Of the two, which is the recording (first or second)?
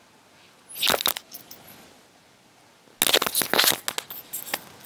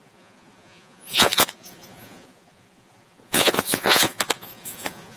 first